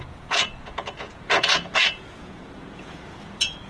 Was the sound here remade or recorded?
remade